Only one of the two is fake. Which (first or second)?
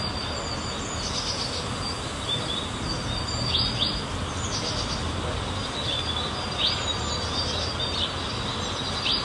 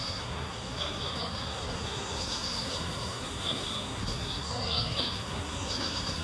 second